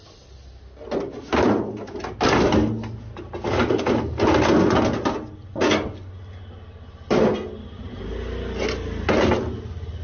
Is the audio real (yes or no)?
yes